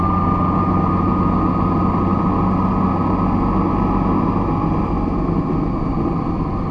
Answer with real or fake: real